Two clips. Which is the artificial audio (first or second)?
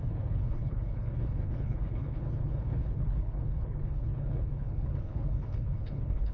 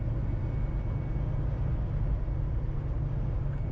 first